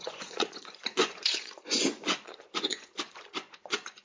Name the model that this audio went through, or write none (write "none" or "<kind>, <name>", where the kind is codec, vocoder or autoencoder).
vocoder, Vocos